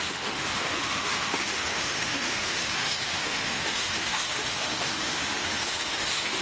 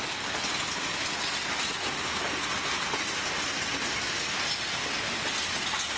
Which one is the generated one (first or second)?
first